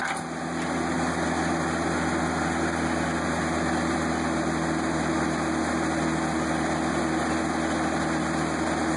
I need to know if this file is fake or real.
real